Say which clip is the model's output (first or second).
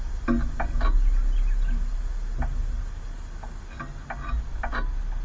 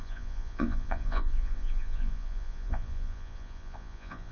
second